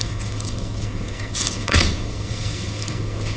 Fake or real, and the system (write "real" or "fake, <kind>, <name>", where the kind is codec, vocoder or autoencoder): fake, codec, SNAC